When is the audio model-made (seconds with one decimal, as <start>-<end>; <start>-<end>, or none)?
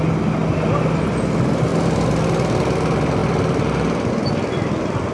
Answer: none